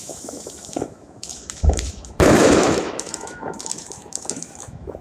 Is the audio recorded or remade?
remade